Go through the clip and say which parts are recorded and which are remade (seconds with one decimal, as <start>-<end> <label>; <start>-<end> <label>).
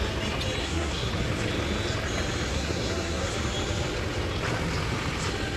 0.0-0.6 recorded; 0.6-1.1 remade; 1.1-2.5 recorded; 2.5-3.3 remade; 3.3-5.6 recorded